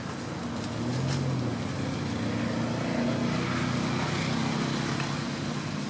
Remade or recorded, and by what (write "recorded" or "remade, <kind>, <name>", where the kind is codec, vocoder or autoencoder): recorded